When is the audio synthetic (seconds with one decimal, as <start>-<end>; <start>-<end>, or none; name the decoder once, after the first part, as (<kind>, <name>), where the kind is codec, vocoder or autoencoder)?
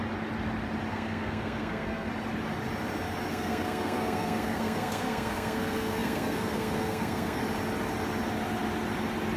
0.9-2.1 (codec, SNAC); 3.3-7.4